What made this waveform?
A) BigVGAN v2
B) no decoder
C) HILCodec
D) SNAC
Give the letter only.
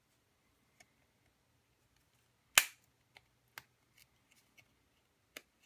B